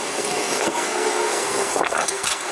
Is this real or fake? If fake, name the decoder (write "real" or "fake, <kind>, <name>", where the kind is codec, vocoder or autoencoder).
fake, codec, SNAC